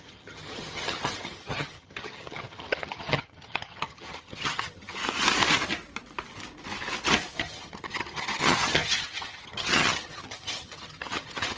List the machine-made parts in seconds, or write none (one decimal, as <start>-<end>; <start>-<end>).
0.0-5.0; 7.3-11.6